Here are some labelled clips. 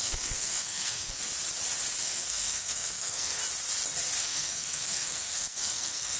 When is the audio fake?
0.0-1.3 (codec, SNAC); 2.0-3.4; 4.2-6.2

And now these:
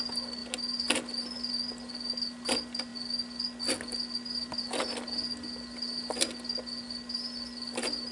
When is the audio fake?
none

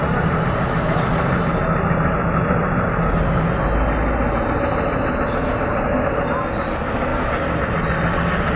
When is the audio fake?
none

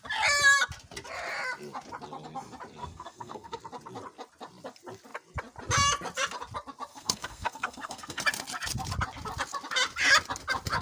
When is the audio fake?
2.8-3.6 (codec, SNAC); 6.9-8.2

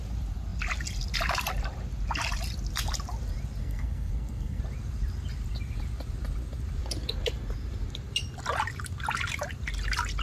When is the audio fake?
3.6-4.6 (codec, SNAC)

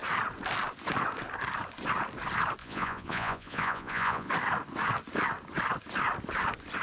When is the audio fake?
2.6-4.3 (vocoder, Vocos)